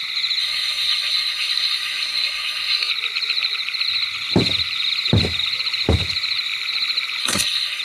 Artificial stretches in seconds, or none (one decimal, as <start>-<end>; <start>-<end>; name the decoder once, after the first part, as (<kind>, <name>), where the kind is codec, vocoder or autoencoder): 0.4-2.9 (codec, SNAC); 7.2-7.8